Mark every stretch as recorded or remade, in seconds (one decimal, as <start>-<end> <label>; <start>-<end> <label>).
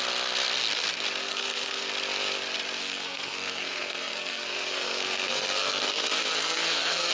0.0-1.2 recorded; 1.2-1.9 remade; 1.9-2.8 recorded; 2.8-7.1 remade